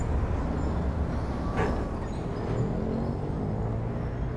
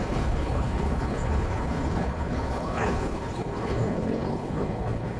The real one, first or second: first